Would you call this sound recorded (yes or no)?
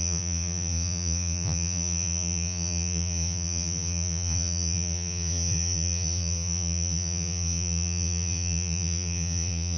no